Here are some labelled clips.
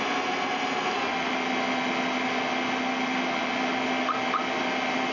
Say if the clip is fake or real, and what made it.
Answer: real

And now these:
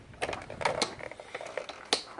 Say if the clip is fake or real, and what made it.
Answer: real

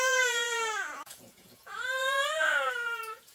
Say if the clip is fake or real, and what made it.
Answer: fake, vocoder, Vocos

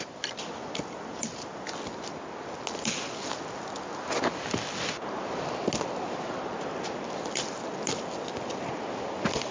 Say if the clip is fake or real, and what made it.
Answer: real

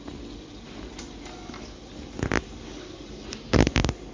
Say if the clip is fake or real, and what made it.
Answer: real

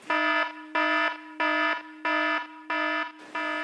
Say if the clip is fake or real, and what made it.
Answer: real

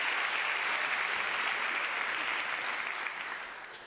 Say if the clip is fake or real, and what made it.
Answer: real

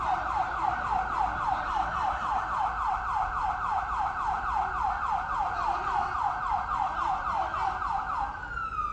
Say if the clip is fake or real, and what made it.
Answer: real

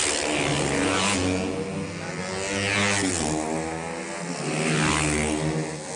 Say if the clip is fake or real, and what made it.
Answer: real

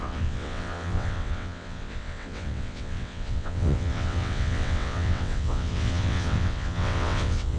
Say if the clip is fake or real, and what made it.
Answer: fake, vocoder, WaveNeXt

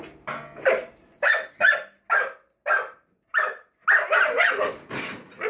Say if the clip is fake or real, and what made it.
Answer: real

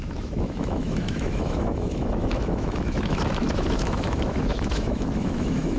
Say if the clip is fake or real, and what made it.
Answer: fake, autoencoder, DAC-VAE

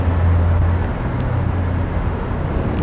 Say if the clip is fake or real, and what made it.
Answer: real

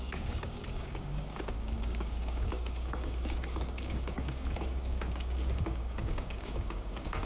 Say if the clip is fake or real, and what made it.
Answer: fake, codec, DAC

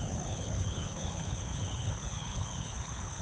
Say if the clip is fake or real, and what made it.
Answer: fake, codec, HILCodec